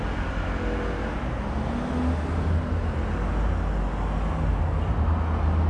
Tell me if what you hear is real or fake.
real